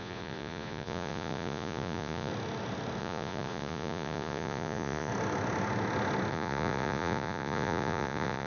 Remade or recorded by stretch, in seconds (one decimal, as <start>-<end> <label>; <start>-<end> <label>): 0.0-2.3 remade; 2.3-3.0 recorded; 3.0-5.1 remade; 5.1-6.3 recorded; 6.3-8.5 remade